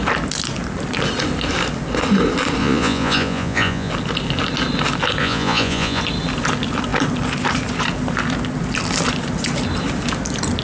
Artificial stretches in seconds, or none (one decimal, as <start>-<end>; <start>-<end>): 2.6-3.9; 5.2-6.0